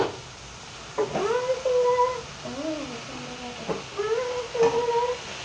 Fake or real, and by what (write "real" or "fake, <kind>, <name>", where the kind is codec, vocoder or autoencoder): real